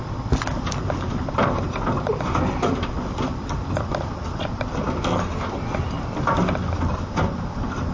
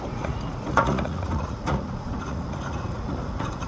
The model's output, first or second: second